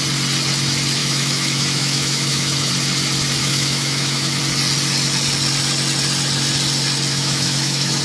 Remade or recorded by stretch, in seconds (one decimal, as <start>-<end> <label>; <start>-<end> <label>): 0.0-1.0 recorded; 1.0-2.7 remade; 2.7-3.4 recorded; 3.4-4.4 remade; 4.4-7.1 recorded; 7.1-8.0 remade